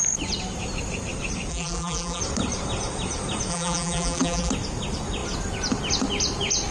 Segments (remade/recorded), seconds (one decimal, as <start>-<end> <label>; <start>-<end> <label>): 0.0-1.5 recorded; 1.5-2.2 remade; 2.2-3.5 recorded; 3.5-4.5 remade; 4.5-6.7 recorded